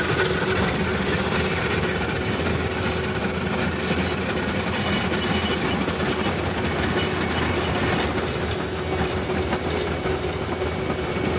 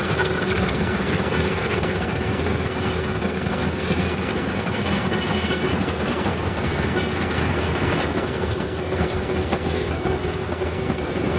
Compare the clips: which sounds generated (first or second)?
second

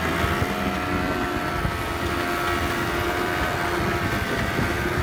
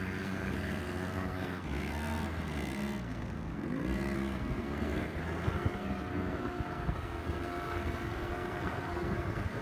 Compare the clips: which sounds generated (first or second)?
second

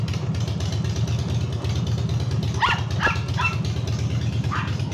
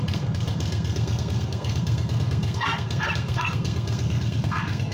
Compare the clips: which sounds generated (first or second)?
second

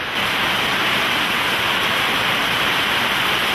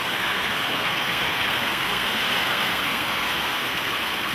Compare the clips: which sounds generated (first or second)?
second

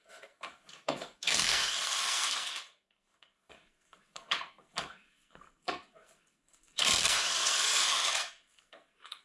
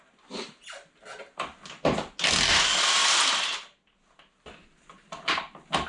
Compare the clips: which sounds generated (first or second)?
first